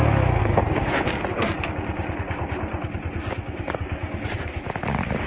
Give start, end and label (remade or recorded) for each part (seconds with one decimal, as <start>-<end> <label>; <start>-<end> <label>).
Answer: 0.0-0.4 recorded; 0.4-1.7 remade; 1.7-3.2 recorded; 3.2-4.3 remade; 4.3-5.3 recorded